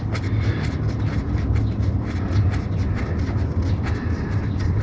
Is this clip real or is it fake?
real